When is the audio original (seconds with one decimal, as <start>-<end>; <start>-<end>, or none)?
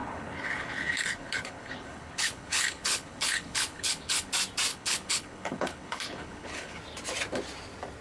4.3-4.7; 6.8-8.0